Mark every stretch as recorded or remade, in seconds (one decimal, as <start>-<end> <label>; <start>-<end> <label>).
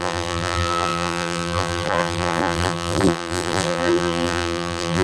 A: 0.0-5.0 remade